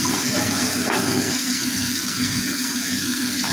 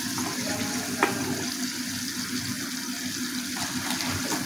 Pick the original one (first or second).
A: second